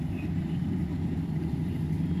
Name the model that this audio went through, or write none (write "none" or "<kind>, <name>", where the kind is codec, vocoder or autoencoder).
none